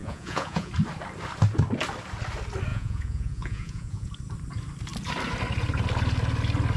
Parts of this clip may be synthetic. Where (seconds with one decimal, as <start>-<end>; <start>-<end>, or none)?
0.0-0.7; 2.7-4.1